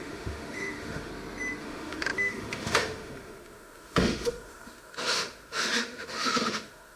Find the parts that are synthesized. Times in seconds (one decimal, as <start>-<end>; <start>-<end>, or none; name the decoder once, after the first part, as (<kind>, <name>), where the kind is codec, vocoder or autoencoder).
0.0-1.1 (autoencoder, DAC-VAE); 1.6-7.0